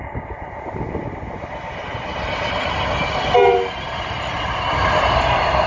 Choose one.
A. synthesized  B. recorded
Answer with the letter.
B